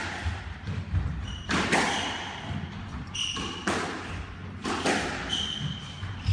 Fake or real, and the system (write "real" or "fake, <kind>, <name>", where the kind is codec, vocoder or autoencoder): real